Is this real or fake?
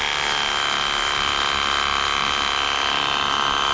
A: real